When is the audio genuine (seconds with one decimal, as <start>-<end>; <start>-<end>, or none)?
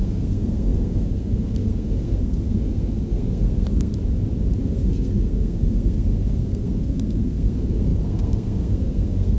3.9-4.6